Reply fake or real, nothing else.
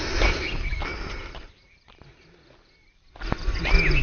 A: real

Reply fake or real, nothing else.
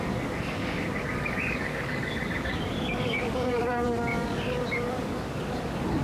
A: fake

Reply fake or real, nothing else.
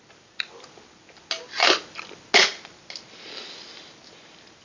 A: real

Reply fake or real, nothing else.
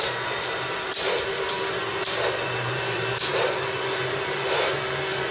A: fake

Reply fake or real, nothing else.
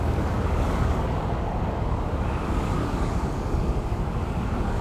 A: fake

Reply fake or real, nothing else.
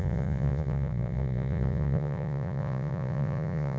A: fake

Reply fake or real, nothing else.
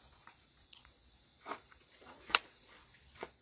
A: fake